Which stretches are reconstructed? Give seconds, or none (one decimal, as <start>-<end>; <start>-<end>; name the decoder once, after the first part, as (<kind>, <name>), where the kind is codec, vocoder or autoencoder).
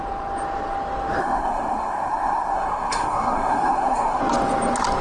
1.2-4.2 (codec, SNAC)